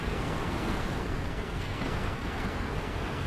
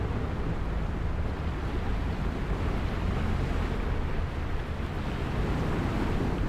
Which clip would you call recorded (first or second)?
second